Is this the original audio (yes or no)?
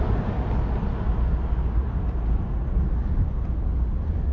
yes